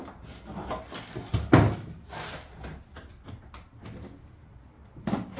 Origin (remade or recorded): recorded